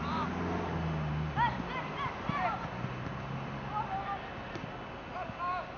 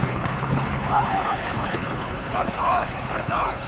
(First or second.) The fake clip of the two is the second